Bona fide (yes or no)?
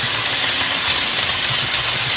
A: yes